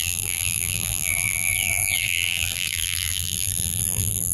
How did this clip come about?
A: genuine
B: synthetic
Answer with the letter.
B